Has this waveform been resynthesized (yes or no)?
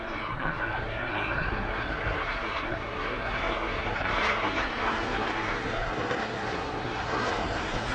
yes